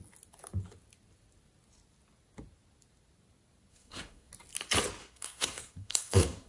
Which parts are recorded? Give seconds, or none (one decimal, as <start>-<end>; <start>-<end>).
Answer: 0.0-3.7; 4.3-5.0